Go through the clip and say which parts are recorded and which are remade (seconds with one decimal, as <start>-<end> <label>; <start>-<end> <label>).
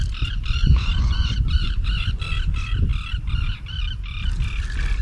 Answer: 0.0-0.6 recorded; 0.6-2.2 remade; 2.2-5.0 recorded